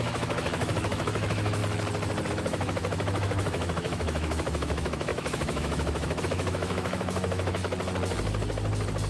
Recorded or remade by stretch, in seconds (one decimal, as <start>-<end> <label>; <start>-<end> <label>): 0.0-1.6 remade; 1.6-2.3 recorded; 2.3-7.6 remade; 7.6-9.1 recorded